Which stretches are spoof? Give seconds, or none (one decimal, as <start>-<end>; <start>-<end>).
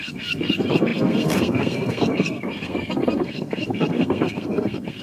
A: 0.0-5.0